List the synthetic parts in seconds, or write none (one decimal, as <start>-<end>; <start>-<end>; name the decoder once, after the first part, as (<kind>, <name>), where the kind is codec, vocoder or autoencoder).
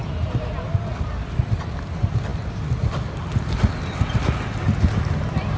none